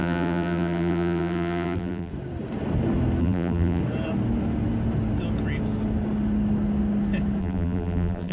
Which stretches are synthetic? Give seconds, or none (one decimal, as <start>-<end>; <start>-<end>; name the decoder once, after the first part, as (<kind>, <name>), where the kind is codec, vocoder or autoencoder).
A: 0.0-2.1 (vocoder, BigVGAN v2); 3.2-3.8; 7.4-8.3